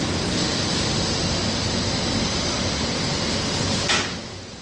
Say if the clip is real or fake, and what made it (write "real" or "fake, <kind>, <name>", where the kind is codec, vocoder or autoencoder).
real